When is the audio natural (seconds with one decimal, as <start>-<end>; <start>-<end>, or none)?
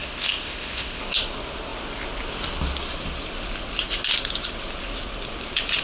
1.0-5.8